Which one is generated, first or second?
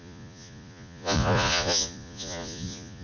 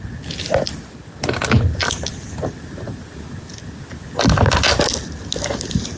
first